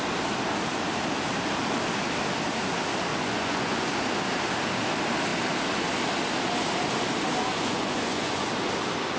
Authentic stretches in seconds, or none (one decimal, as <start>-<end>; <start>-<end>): 0.0-3.1; 3.9-7.5; 8.5-9.2